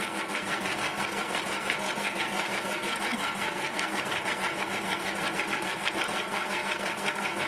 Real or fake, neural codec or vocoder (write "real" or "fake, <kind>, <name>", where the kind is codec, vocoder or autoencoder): fake, codec, SNAC